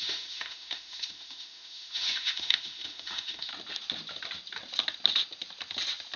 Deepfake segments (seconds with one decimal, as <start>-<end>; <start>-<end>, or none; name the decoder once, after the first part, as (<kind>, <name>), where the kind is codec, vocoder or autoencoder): 0.0-3.5 (autoencoder, DAC-VAE)